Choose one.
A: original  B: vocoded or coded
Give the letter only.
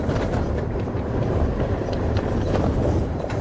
B